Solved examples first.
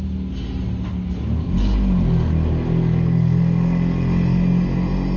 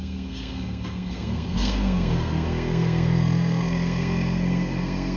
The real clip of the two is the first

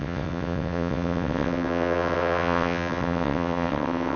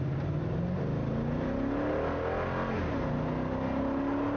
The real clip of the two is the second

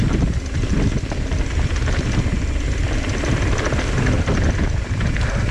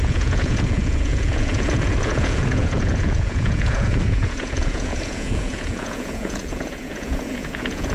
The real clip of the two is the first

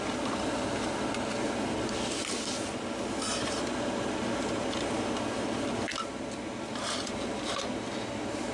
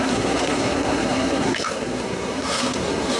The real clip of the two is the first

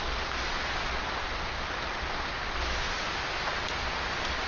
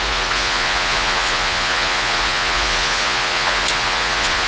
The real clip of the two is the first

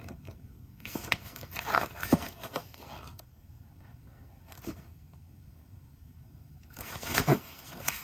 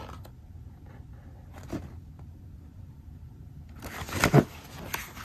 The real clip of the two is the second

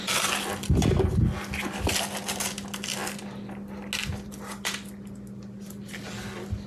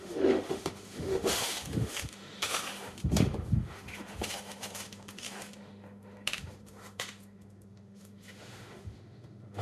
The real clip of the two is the first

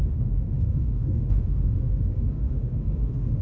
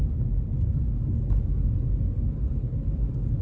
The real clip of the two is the second